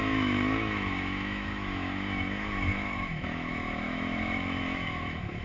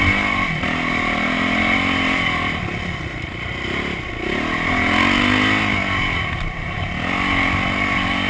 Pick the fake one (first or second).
first